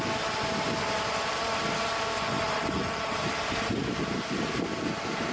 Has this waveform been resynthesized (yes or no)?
no